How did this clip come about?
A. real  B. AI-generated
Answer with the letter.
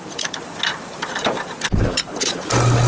A